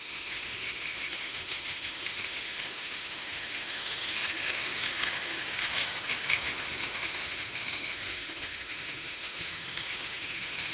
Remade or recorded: remade